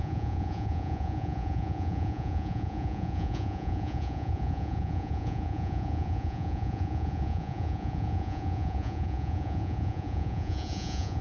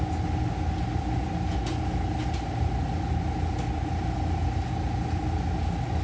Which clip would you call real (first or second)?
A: second